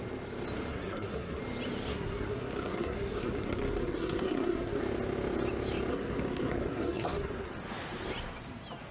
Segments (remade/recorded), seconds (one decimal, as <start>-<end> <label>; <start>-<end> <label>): 0.0-0.7 recorded; 0.7-1.4 remade; 1.4-1.9 recorded; 1.9-4.8 remade; 4.8-5.9 recorded; 5.9-7.5 remade; 7.5-8.9 recorded